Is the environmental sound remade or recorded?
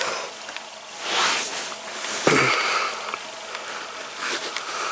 recorded